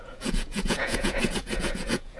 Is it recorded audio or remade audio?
remade